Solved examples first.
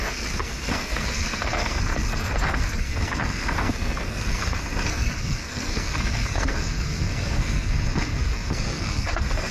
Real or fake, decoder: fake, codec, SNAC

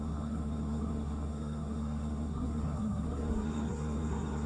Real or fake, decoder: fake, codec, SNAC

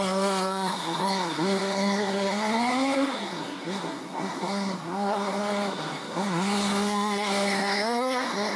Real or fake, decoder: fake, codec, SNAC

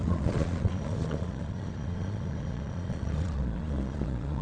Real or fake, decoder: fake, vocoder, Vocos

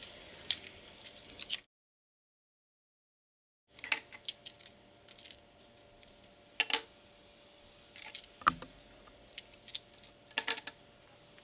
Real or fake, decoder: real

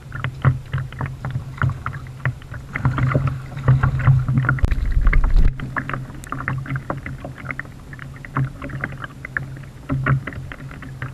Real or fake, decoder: real